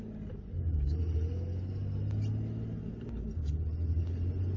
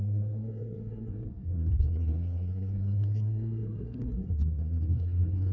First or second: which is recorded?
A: first